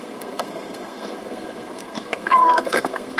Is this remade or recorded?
remade